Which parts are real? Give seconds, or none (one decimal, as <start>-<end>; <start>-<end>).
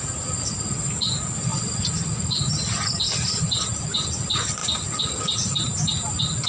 0.0-6.5